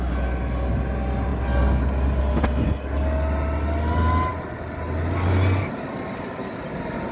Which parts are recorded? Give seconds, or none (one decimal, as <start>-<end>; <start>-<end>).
0.0-7.1